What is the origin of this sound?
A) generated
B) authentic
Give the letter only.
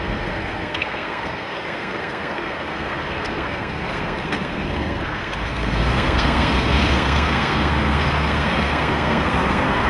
A